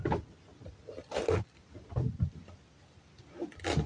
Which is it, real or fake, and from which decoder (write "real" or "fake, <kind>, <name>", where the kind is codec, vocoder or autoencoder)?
real